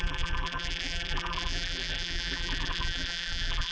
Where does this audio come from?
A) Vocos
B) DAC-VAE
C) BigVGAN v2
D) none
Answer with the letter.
C